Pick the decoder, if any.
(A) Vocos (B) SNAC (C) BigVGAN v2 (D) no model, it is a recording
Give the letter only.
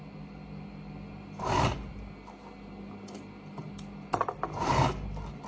D